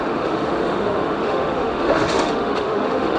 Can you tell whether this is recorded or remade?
remade